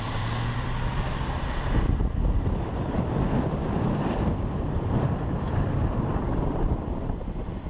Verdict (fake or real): fake